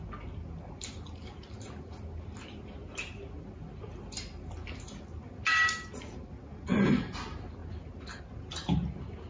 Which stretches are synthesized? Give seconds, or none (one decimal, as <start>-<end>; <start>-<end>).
none